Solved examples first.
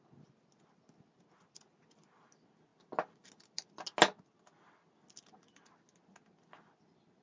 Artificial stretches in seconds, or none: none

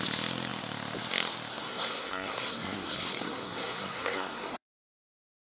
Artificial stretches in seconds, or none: 1.5-4.7 (codec, SNAC)

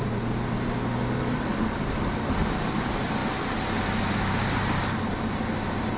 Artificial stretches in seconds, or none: none

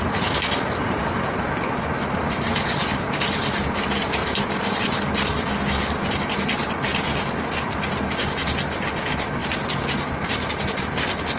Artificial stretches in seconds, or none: none

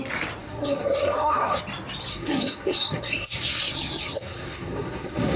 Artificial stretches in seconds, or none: 0.4-1.6 (codec, SNAC); 2.1-5.4